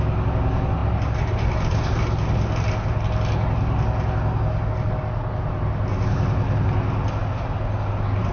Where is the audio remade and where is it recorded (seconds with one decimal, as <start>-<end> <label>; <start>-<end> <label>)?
0.0-8.3 recorded